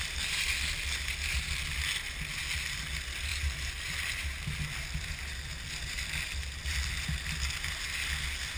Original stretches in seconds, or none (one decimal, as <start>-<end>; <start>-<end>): 0.0-3.3; 3.9-8.6